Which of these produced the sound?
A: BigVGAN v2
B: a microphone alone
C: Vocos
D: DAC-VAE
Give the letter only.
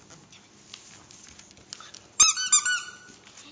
B